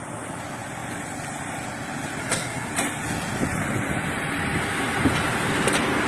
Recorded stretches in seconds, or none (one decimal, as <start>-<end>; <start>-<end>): 0.0-2.2; 2.7-6.1